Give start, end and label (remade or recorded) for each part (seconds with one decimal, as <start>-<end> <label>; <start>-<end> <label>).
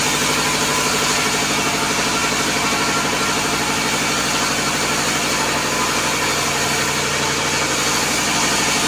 0.0-8.9 recorded